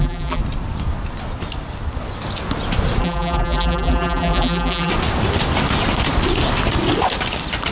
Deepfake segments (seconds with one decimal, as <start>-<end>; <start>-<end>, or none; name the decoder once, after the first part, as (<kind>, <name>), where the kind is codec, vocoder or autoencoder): 0.0-0.4 (vocoder, BigVGAN v2); 3.0-4.9

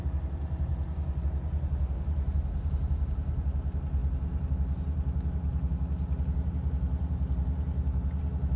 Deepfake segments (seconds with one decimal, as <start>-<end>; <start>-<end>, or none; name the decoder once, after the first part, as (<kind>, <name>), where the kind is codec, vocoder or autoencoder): none

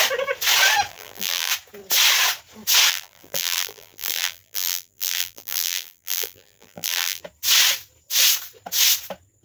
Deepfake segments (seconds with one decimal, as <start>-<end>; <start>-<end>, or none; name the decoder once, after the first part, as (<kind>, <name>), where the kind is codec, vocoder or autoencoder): 0.9-1.5 (vocoder, BigVGAN v2); 2.9-7.2